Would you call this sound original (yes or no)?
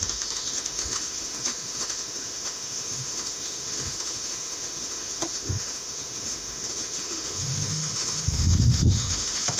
no